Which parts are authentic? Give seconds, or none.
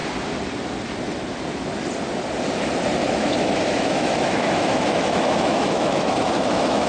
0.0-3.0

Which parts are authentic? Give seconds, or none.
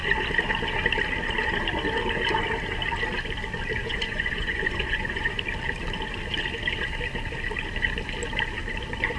0.0-3.8; 5.3-9.2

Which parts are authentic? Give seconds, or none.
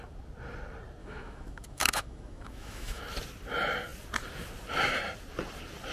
0.0-1.0; 3.0-5.9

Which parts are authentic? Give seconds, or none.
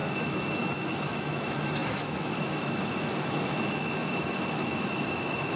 none